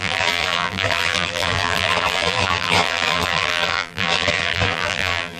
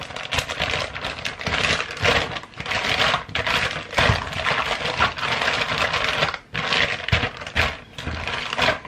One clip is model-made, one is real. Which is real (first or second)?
second